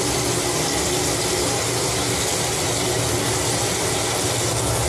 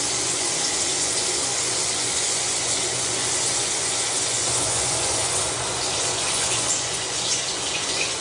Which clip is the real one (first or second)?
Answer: first